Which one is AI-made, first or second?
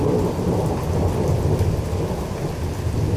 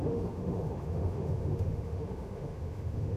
second